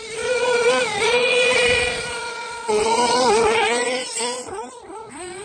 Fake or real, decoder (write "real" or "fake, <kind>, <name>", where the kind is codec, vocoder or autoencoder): fake, vocoder, Vocos